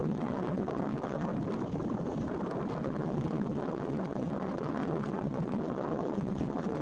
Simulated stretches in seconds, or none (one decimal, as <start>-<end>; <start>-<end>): 0.0-1.3; 2.8-6.8